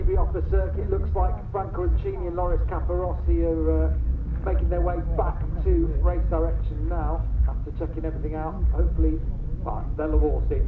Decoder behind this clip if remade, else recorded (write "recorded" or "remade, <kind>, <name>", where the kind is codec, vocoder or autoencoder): recorded